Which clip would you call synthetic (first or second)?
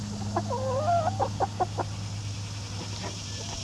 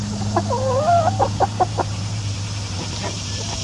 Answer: second